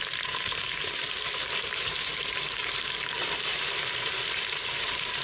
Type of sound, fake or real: fake